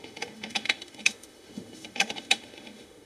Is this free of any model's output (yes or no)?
no